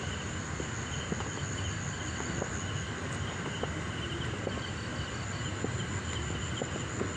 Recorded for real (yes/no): yes